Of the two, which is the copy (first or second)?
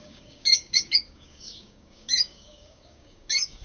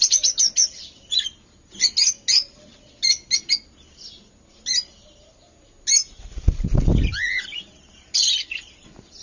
first